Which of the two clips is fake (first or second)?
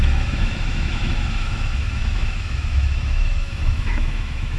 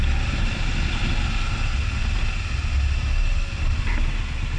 first